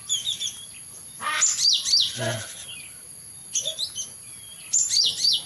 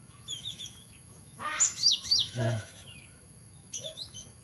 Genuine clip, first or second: first